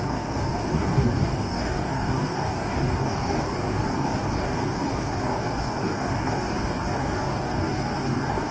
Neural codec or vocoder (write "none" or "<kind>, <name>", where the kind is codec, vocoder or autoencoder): codec, DAC